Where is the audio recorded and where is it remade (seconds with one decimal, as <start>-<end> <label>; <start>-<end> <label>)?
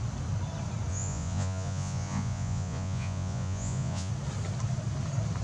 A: 0.0-0.9 recorded; 0.9-4.1 remade; 4.1-5.4 recorded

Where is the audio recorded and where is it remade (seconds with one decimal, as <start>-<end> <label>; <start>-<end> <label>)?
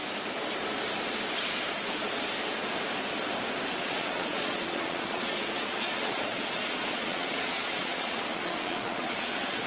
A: 0.0-3.8 recorded; 3.8-9.7 remade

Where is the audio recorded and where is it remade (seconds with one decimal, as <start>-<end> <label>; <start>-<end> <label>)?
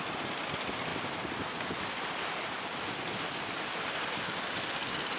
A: 0.0-5.2 recorded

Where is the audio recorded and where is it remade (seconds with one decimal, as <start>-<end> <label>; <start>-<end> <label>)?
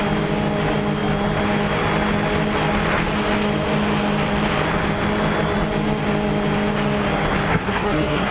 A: 0.0-7.5 recorded; 7.5-8.3 remade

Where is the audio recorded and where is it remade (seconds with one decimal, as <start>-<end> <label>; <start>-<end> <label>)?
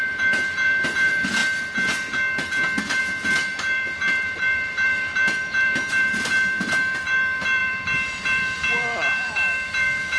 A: 0.0-1.4 remade; 1.4-3.0 recorded; 3.0-10.2 remade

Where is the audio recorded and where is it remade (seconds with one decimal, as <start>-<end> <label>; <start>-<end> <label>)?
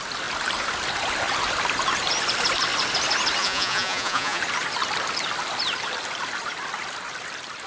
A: 0.0-3.4 recorded; 3.4-4.4 remade; 4.4-7.7 recorded